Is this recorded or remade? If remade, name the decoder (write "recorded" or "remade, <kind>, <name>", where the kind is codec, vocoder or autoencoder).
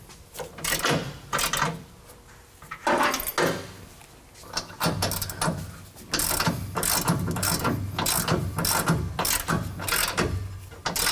recorded